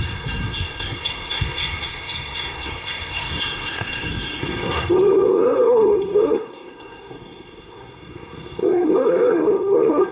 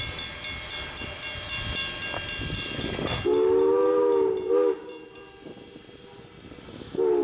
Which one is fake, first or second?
first